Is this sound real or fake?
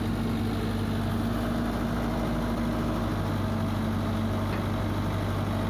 real